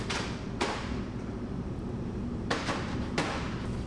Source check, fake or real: fake